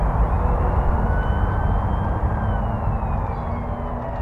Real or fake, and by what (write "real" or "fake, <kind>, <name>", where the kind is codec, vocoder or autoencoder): real